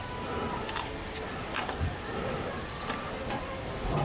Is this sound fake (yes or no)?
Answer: no